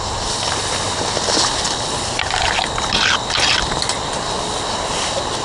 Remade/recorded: recorded